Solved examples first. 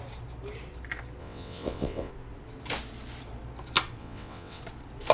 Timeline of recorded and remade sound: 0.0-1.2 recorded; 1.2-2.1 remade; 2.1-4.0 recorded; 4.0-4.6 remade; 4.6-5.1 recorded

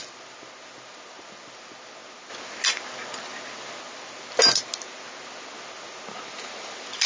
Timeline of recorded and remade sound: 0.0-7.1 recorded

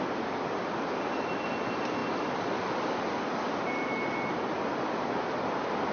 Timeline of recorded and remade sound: 0.0-5.9 recorded